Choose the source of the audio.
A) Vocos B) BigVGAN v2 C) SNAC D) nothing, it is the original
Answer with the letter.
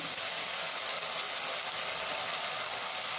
D